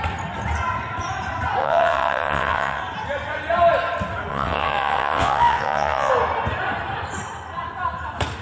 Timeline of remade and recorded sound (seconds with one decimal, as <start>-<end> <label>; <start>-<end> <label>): 0.0-1.6 recorded; 1.6-2.8 remade; 2.8-4.3 recorded; 4.3-6.1 remade; 6.1-8.4 recorded

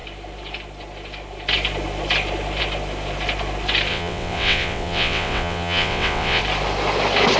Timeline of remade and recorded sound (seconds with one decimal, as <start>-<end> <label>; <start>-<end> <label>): 0.0-3.9 recorded; 3.9-6.4 remade; 6.4-7.4 recorded

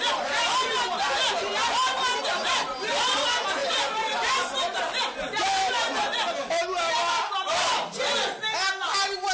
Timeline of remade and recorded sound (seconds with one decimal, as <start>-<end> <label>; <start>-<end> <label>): 0.0-9.3 recorded

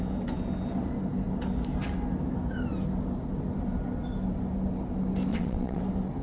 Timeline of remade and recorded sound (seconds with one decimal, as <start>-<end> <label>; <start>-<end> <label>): 0.0-5.3 recorded; 5.3-5.8 remade; 5.8-6.2 recorded

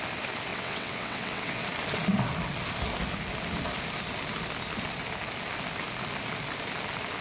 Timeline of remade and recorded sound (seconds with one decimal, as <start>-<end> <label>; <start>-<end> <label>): 0.0-0.5 recorded; 0.5-1.6 remade; 1.6-7.2 recorded

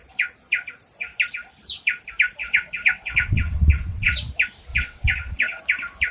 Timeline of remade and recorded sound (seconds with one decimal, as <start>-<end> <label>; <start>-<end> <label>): 0.0-2.4 recorded; 2.4-4.2 remade; 4.2-4.7 recorded; 4.7-5.6 remade; 5.6-6.1 recorded